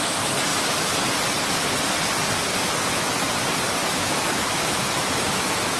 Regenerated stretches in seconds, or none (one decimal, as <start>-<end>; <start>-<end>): 3.8-5.8